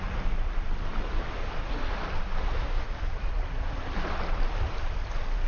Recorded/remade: recorded